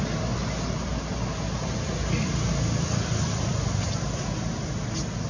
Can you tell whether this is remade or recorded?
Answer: recorded